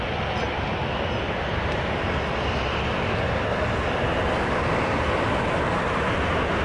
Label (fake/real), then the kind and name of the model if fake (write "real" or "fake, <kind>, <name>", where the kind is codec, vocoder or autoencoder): real